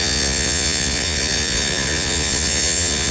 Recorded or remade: remade